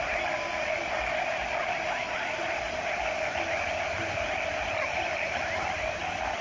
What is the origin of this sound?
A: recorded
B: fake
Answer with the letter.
A